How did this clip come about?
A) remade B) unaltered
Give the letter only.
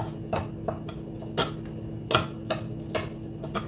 B